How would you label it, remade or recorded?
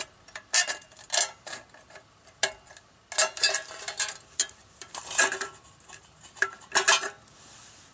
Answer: recorded